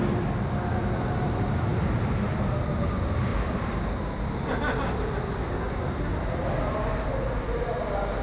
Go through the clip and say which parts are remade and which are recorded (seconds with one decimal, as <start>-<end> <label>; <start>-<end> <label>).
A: 0.0-8.2 recorded